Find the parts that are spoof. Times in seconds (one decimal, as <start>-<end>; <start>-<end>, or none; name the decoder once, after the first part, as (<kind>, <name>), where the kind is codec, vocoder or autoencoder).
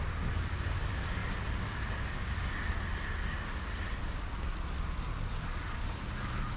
none